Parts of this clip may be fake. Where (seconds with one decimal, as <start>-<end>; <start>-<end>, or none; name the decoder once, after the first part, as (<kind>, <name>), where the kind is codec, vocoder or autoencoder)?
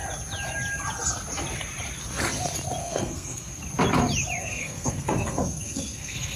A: 2.8-3.6 (codec, SNAC); 4.4-6.4